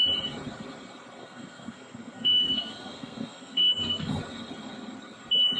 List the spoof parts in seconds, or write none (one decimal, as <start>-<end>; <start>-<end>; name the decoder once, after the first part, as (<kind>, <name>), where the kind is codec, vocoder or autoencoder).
1.2-4.2 (codec, SNAC)